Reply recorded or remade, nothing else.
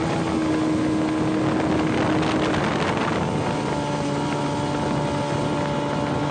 recorded